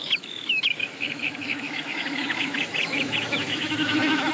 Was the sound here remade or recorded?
remade